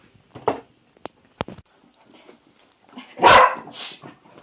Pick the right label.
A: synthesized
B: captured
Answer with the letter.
B